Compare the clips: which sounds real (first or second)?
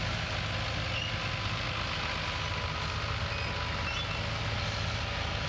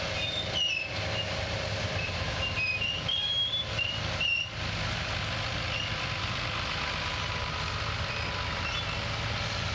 first